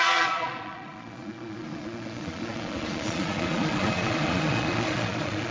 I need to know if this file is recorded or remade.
remade